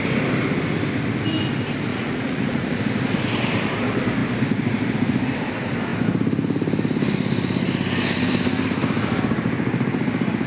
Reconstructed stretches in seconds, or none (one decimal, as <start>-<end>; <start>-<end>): 1.9-2.8